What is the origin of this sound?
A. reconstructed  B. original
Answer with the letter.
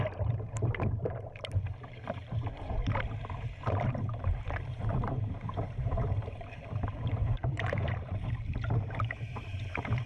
A